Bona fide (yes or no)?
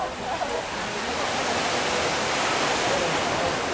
yes